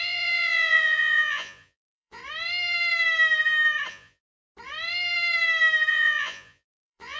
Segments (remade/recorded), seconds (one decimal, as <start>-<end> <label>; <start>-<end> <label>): 0.0-2.2 remade; 2.2-3.9 recorded; 3.9-4.3 remade; 4.3-5.9 recorded; 5.9-7.2 remade